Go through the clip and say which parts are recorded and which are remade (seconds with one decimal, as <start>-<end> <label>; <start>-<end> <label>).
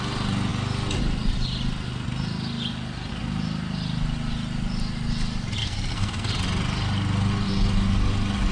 0.0-5.6 recorded; 5.6-6.3 remade; 6.3-8.5 recorded